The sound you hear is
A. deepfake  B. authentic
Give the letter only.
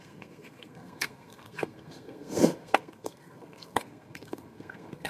A